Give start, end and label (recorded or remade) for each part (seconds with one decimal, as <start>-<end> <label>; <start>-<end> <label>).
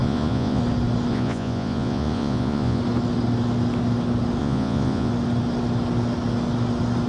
0.0-0.6 remade; 0.6-1.1 recorded; 1.1-2.8 remade; 2.8-4.4 recorded; 4.4-5.1 remade; 5.1-7.1 recorded